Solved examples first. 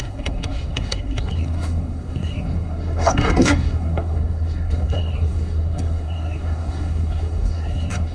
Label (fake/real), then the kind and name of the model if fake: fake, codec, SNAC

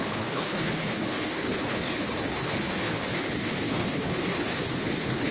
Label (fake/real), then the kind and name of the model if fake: fake, codec, HILCodec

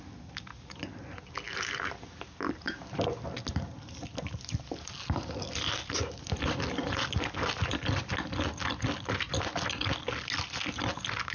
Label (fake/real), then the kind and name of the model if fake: real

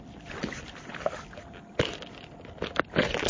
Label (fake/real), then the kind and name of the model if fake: real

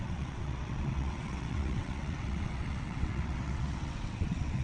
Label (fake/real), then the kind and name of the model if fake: fake, vocoder, WaveNeXt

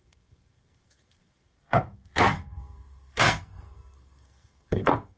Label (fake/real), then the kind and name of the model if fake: fake, codec, SNAC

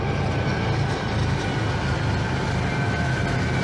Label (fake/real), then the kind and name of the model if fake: real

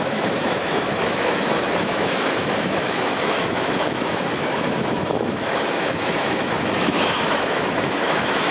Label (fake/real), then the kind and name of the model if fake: fake, autoencoder, DAC-VAE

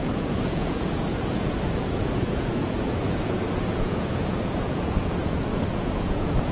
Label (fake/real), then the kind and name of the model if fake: fake, vocoder, Vocos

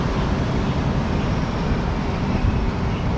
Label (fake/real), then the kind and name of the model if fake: real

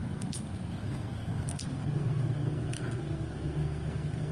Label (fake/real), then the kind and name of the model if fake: fake, codec, SNAC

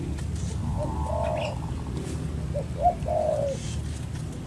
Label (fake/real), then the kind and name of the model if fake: real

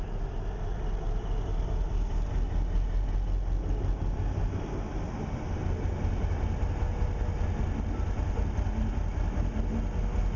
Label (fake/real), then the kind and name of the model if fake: real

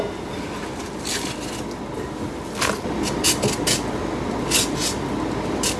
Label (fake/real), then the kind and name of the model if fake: real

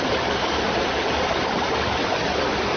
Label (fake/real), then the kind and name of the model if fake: fake, vocoder, BigVGAN v2